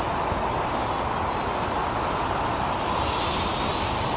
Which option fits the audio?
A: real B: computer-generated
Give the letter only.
A